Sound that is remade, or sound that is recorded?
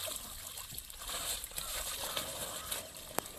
recorded